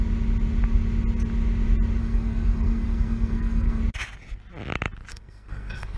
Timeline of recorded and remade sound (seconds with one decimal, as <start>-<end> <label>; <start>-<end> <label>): 0.0-2.0 recorded; 2.0-3.8 remade; 3.8-5.1 recorded; 5.1-6.0 remade